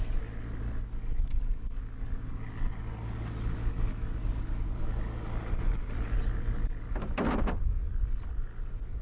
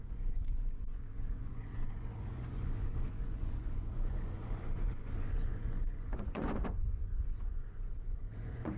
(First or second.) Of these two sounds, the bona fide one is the first